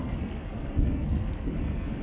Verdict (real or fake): fake